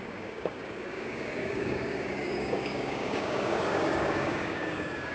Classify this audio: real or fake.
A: fake